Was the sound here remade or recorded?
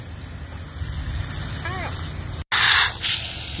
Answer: recorded